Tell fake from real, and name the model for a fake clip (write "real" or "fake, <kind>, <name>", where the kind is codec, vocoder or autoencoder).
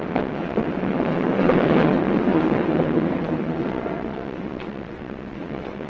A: fake, vocoder, WaveNeXt